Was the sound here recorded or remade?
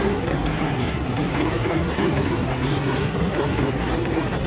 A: remade